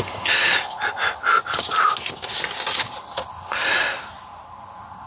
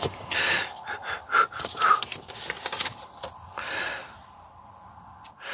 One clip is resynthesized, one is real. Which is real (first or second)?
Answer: first